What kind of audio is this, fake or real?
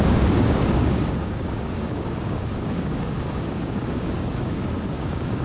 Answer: fake